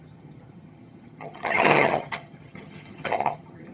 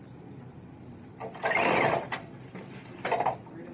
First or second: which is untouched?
second